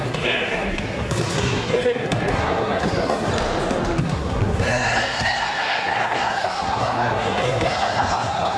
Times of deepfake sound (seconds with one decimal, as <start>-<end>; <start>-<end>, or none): 0.0-3.3; 4.0-8.6